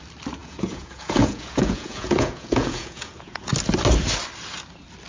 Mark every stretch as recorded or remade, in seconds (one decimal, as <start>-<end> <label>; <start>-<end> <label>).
0.0-0.4 recorded; 0.4-3.5 remade; 3.5-5.1 recorded